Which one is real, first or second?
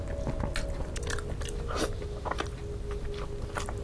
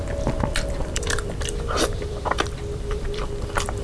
first